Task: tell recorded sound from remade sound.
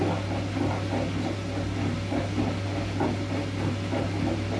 recorded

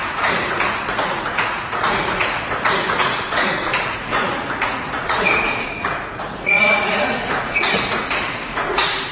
remade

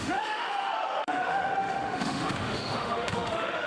remade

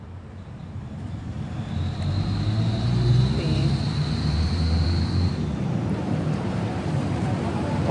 remade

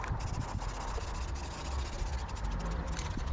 recorded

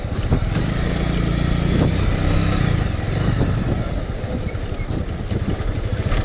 recorded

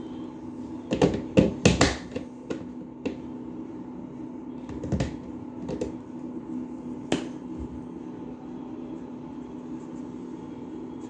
recorded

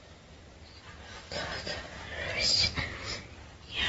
recorded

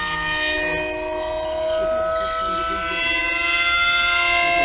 recorded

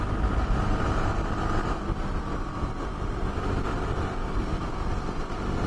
recorded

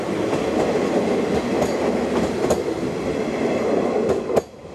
recorded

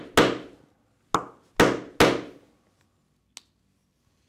recorded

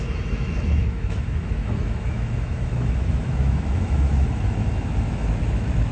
remade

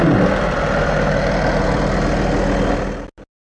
recorded